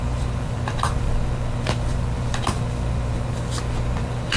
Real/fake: fake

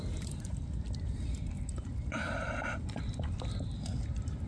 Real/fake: fake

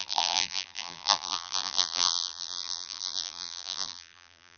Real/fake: fake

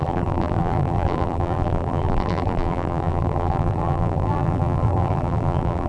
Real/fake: fake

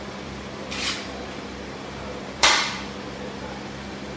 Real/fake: fake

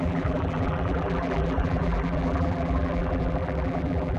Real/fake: fake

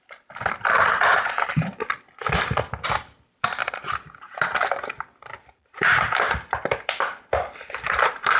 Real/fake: fake